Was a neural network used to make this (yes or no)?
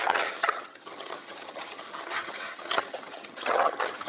yes